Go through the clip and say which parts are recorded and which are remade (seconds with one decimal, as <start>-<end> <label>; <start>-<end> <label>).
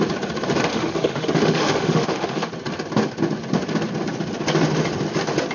0.0-0.7 recorded; 0.7-2.5 remade; 2.5-5.5 recorded